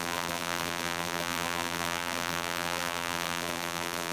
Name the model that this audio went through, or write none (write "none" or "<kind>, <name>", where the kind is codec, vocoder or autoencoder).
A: vocoder, BigVGAN v2